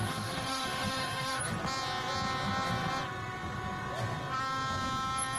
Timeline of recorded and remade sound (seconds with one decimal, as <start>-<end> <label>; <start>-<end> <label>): 0.0-1.4 remade; 1.4-5.4 recorded